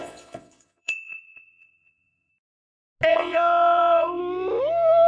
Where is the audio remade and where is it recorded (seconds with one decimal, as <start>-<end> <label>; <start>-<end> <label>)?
0.0-2.3 remade; 2.3-3.1 recorded; 3.1-4.2 remade; 4.2-5.1 recorded